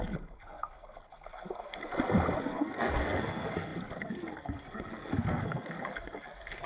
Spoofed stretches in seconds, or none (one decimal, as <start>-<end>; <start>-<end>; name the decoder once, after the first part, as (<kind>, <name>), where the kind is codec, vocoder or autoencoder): 0.0-1.9 (codec, SNAC); 2.4-6.7